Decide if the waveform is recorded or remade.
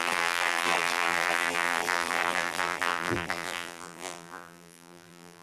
remade